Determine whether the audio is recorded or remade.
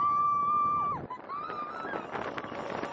recorded